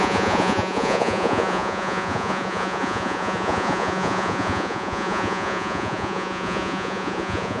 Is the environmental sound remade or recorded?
remade